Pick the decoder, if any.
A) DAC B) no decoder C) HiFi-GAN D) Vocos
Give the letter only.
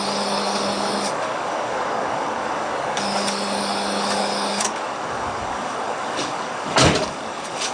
A